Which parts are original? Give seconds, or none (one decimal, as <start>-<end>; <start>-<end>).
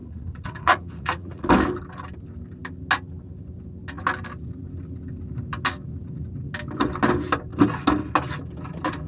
1.5-9.1